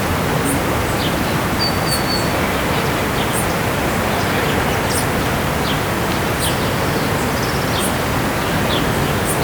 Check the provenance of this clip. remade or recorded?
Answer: recorded